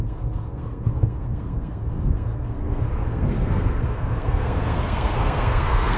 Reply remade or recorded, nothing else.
remade